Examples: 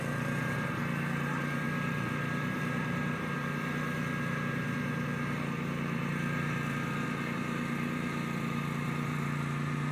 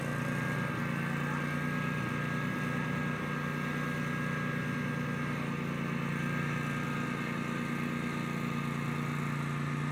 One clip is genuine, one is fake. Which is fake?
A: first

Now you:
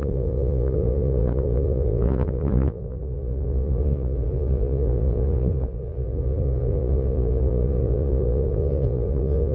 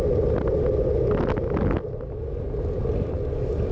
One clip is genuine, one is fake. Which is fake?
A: first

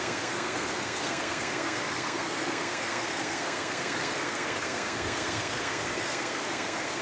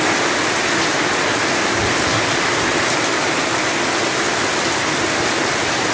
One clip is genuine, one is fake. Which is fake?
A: first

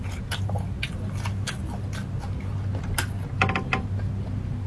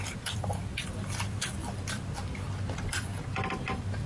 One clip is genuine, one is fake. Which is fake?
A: second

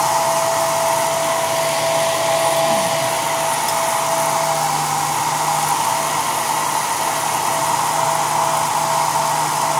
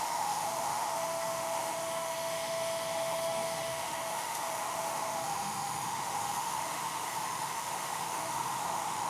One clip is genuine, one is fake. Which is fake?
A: second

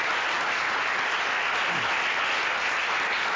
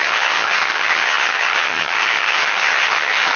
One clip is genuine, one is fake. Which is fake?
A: second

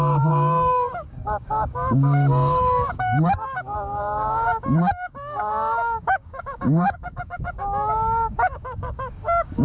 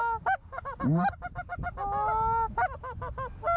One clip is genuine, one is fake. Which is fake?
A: first